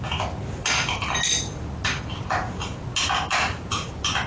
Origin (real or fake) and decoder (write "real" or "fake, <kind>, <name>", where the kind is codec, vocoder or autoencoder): real